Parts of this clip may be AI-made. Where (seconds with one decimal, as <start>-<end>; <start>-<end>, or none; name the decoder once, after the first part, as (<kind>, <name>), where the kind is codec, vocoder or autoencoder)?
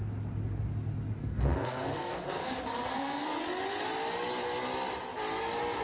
1.2-3.4 (codec, SNAC)